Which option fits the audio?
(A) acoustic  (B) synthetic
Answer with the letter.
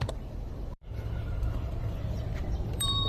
B